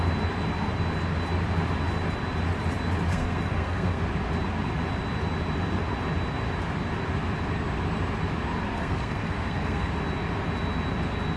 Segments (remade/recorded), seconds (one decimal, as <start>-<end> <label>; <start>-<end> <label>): 0.0-3.1 recorded; 3.1-4.0 remade; 4.0-8.7 recorded; 8.7-9.9 remade; 9.9-11.4 recorded